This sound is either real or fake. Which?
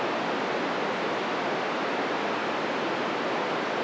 real